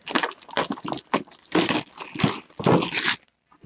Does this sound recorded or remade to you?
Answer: recorded